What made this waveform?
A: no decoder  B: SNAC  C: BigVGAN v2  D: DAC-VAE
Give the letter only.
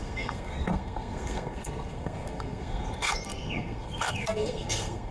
B